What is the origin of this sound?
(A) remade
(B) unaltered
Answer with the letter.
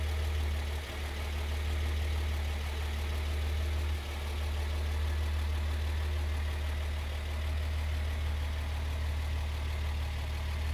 B